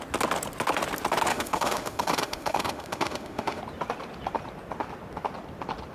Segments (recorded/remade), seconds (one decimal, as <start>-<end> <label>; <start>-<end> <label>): 0.0-1.3 recorded; 1.3-3.6 remade; 3.6-5.9 recorded